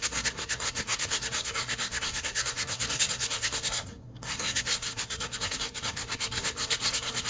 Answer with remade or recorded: remade